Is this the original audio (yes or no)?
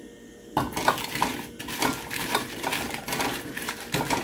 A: yes